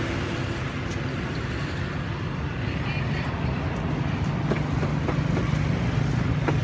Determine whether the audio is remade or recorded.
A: recorded